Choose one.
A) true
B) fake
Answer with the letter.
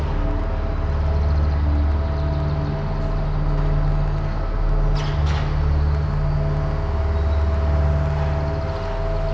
A